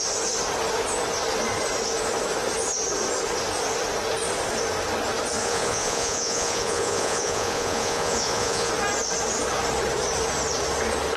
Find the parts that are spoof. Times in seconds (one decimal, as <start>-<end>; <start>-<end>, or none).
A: 5.4-8.7